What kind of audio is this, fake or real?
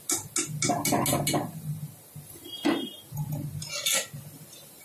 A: real